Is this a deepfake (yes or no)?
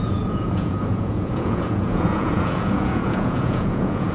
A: yes